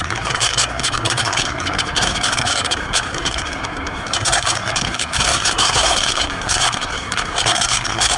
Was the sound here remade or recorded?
remade